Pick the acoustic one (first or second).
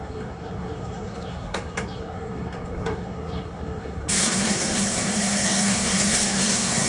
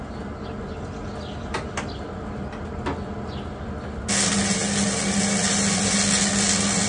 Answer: second